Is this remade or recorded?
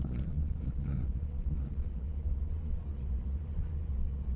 remade